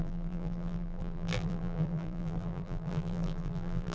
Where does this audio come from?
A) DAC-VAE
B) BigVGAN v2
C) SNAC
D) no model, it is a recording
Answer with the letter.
B